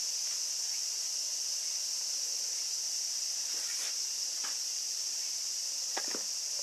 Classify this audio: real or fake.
real